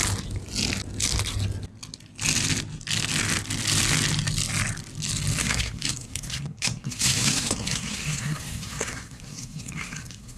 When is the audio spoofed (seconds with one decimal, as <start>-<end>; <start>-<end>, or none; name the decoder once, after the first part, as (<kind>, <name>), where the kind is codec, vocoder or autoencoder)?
5.4-10.4 (codec, SNAC)